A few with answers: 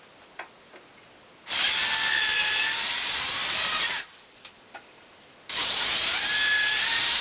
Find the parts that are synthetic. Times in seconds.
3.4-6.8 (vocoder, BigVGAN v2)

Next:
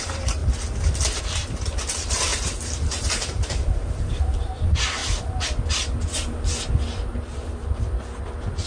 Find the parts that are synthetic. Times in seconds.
0.0-0.4 (vocoder, BigVGAN v2); 1.2-5.0

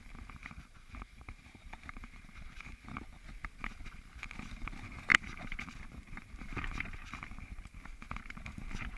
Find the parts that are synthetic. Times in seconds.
0.4-3.0 (vocoder, BigVGAN v2); 5.1-7.6

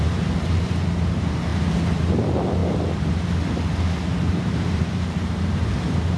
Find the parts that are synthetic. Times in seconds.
0.0-2.6 (vocoder, BigVGAN v2); 4.3-6.2

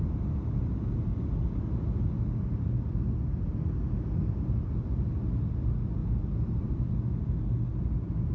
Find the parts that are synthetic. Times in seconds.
6.0-6.7 (vocoder, BigVGAN v2)